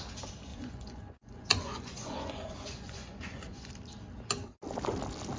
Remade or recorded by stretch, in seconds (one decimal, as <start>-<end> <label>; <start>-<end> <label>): 0.0-0.5 recorded; 0.5-3.7 remade; 3.7-5.4 recorded